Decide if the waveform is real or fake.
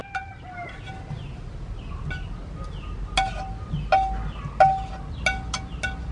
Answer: real